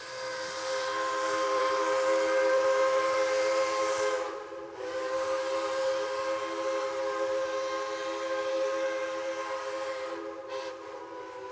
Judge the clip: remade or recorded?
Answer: remade